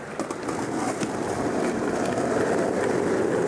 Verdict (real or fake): real